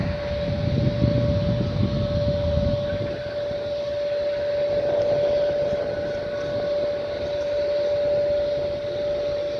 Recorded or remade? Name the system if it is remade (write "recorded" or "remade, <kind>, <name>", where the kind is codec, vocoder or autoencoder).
recorded